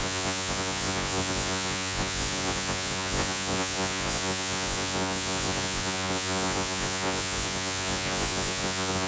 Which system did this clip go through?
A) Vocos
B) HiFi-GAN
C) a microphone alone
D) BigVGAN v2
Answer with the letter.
A